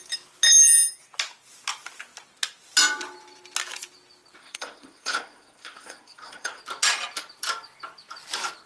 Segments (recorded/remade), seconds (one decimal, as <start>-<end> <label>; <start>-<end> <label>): 0.0-4.4 recorded; 4.4-6.6 remade; 6.6-8.7 recorded